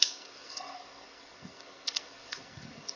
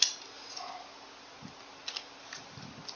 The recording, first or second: second